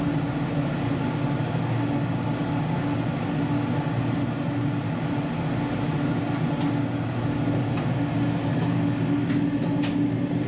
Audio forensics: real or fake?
real